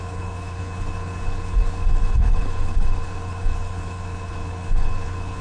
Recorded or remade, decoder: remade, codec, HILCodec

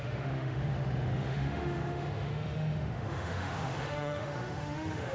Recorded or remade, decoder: remade, autoencoder, DAC-VAE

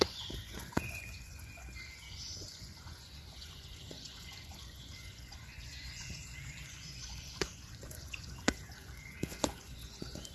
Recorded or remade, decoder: remade, vocoder, Vocos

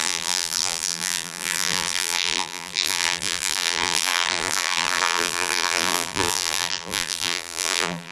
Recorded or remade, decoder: remade, vocoder, BigVGAN v2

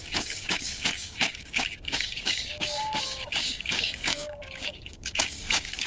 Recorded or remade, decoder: remade, codec, DAC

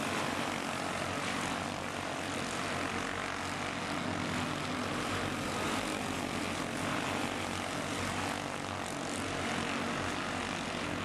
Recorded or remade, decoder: recorded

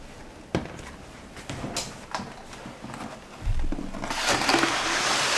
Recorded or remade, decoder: recorded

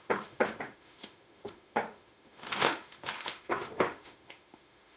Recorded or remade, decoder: remade, autoencoder, DAC-VAE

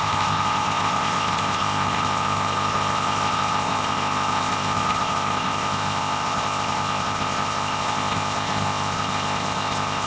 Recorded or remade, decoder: remade, codec, ZipCodec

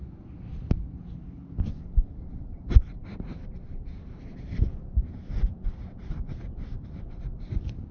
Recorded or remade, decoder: recorded